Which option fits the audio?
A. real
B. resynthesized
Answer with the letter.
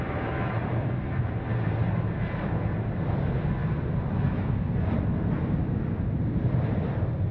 A